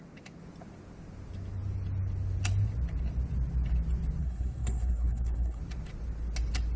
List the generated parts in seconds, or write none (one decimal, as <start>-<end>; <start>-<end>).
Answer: 4.2-5.6